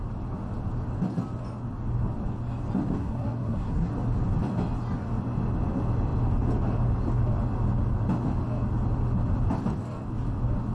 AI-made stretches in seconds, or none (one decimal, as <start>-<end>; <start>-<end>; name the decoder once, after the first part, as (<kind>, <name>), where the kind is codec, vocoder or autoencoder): 3.0-3.9 (codec, SNAC)